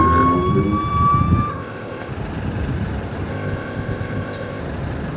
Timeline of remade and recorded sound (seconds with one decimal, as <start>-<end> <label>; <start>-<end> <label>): 0.0-1.5 recorded; 1.5-2.1 remade; 2.1-3.3 recorded; 3.3-4.6 remade; 4.6-5.2 recorded